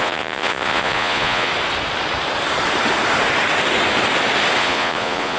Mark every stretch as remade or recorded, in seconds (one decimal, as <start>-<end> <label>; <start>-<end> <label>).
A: 0.0-1.5 remade; 1.5-4.6 recorded; 4.6-5.4 remade